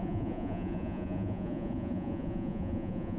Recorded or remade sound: remade